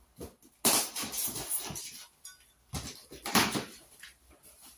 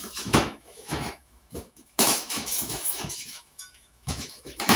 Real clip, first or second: first